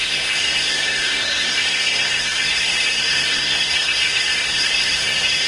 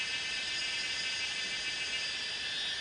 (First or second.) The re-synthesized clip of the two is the first